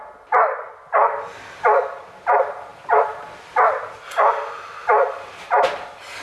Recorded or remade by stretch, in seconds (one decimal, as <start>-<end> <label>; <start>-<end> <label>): 0.0-6.2 recorded

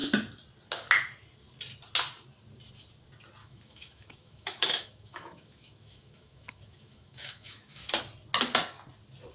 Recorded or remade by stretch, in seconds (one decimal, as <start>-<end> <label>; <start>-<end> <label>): 0.0-3.4 recorded; 3.4-7.9 remade; 7.9-9.3 recorded

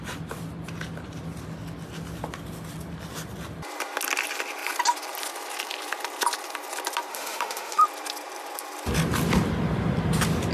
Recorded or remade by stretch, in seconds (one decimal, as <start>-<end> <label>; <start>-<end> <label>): 0.0-7.1 recorded; 7.1-7.8 remade; 7.8-10.5 recorded

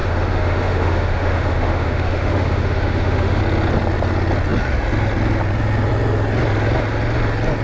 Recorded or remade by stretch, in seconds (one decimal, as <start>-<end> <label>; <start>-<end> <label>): 0.0-3.4 remade; 3.4-7.6 recorded